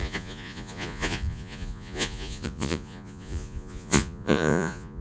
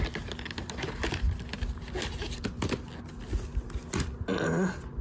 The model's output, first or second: first